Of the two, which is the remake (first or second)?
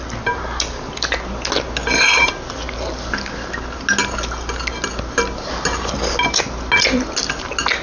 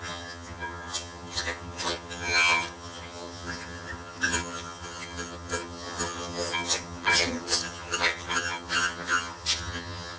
second